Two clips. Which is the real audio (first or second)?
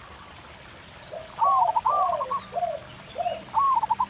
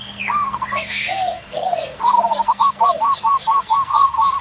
first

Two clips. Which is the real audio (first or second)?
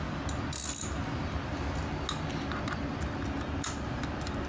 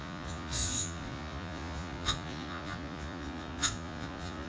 first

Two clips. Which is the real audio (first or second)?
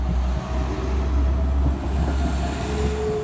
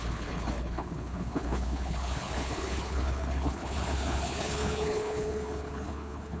first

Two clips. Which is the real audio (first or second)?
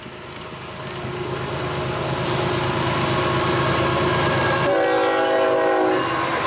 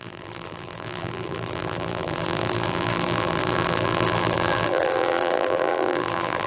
first